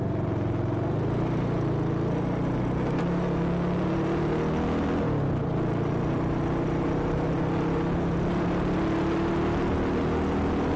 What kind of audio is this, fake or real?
real